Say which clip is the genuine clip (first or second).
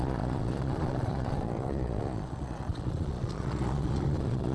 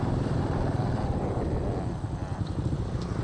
second